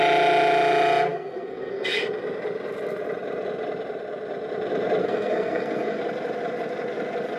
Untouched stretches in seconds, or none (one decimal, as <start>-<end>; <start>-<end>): 0.0-1.1; 2.0-5.0; 6.0-7.4